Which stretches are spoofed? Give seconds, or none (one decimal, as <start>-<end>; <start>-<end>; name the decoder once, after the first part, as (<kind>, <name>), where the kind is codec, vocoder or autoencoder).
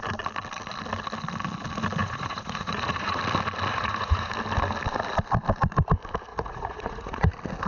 2.0-3.2 (vocoder, Vocos); 3.7-4.3; 6.3-7.3